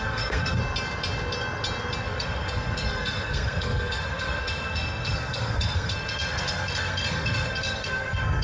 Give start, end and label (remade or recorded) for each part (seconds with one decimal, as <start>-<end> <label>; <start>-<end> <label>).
0.0-0.6 remade; 0.6-2.0 recorded; 2.0-8.4 remade